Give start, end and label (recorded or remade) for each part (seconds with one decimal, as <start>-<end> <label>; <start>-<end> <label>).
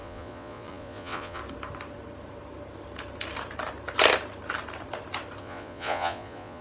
0.0-1.4 remade; 1.4-5.4 recorded; 5.4-6.6 remade